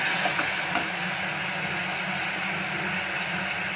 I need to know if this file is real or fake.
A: real